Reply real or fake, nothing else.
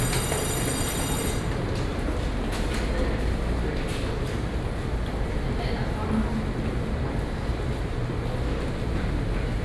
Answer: real